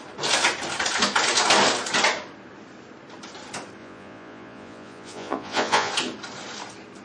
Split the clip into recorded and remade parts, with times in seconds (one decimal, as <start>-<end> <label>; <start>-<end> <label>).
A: 0.0-3.8 recorded; 3.8-5.9 remade; 5.9-7.0 recorded